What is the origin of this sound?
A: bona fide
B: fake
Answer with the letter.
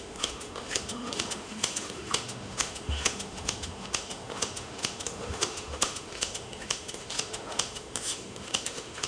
B